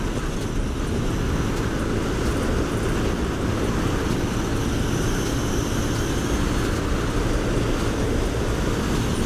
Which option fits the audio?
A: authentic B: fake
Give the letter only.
A